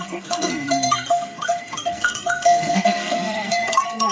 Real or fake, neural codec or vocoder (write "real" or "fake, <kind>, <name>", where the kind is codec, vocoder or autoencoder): fake, codec, SNAC